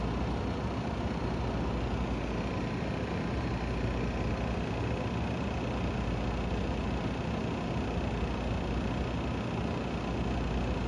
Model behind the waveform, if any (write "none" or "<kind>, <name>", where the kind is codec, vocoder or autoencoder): none